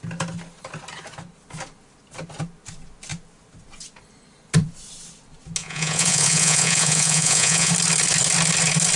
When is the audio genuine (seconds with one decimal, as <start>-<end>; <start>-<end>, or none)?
0.0-5.6; 7.7-9.0